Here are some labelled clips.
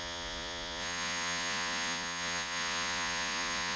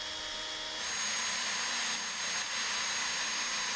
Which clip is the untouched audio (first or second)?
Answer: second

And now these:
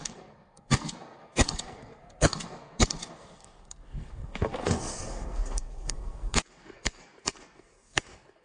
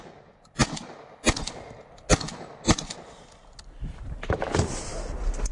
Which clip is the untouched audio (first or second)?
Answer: second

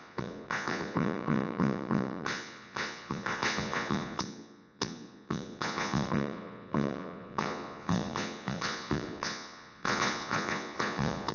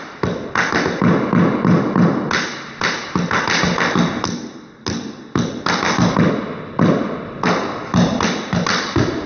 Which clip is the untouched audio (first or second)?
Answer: second